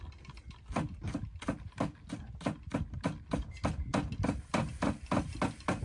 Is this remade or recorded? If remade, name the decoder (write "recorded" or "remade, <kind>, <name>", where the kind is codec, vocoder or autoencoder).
recorded